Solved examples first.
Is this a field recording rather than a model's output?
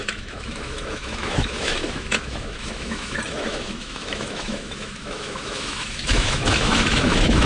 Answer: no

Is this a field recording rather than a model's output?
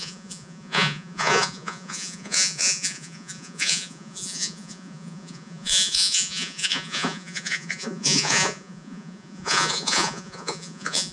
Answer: no